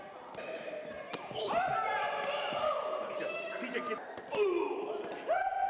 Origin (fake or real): fake